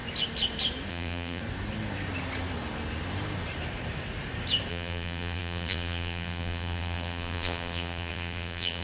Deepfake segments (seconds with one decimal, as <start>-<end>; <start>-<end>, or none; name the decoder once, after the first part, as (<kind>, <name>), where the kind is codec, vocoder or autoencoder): 0.9-1.4 (vocoder, BigVGAN v2); 4.7-8.8